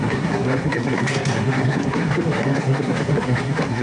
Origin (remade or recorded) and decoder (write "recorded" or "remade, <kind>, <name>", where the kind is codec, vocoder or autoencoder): remade, codec, SNAC